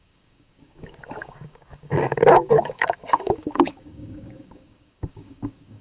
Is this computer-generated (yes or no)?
yes